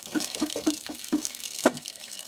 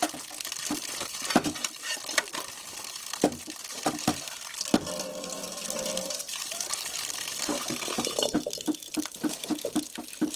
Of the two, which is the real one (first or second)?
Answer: second